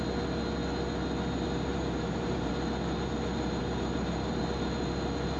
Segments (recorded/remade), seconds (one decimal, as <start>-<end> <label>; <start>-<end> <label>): 0.0-1.7 recorded; 1.7-2.5 remade; 2.5-3.6 recorded; 3.6-4.4 remade; 4.4-5.4 recorded